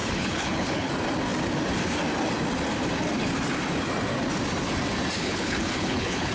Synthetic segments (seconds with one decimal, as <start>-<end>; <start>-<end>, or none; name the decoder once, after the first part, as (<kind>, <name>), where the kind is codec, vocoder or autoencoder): 0.0-0.9 (codec, HILCodec); 5.2-6.3